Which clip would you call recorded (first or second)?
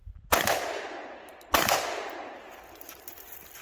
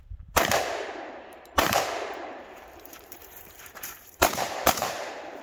first